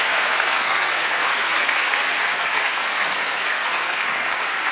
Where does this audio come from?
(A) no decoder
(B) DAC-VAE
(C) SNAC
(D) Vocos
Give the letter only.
C